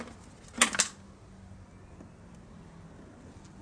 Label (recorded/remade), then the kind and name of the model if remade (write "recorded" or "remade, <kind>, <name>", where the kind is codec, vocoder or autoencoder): recorded